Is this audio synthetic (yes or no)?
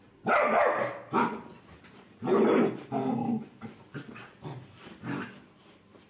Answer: yes